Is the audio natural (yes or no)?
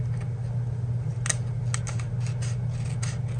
yes